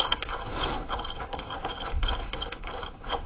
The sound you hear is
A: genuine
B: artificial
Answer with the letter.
B